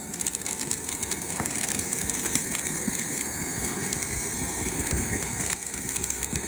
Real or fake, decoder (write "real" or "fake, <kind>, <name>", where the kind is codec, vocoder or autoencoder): fake, codec, SNAC